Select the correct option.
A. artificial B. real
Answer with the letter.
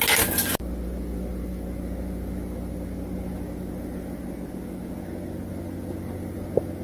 B